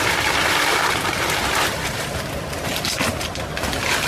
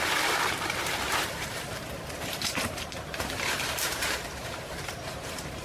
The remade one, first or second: second